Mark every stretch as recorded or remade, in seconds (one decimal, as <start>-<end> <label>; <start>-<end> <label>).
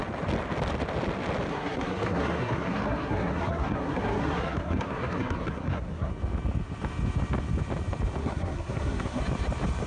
0.0-1.5 recorded; 1.5-6.1 remade; 6.1-8.2 recorded; 8.2-9.2 remade; 9.2-9.9 recorded